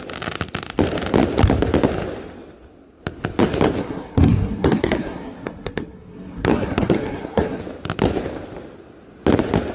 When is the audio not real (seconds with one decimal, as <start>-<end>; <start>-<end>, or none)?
3.8-7.6